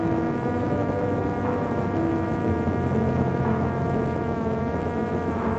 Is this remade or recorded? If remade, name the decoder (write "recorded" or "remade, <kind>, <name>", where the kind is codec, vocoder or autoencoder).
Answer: remade, autoencoder, DAC-VAE